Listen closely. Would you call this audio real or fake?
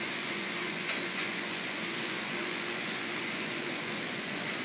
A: fake